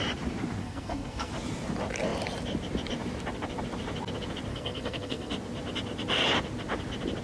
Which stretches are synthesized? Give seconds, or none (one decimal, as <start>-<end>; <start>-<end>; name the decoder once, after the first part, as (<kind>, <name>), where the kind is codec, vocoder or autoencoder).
0.6-1.3 (codec, SNAC); 4.5-5.3